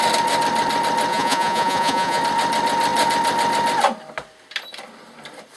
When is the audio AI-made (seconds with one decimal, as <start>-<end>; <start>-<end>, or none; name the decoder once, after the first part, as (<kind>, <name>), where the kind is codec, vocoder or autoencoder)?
1.1-2.2 (vocoder, Vocos)